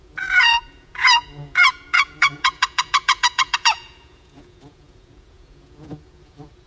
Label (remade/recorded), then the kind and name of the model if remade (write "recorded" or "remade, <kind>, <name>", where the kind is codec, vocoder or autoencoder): remade, vocoder, Vocos